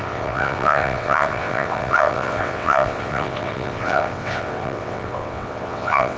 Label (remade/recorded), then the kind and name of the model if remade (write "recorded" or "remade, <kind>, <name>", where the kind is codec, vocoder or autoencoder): remade, vocoder, WaveNeXt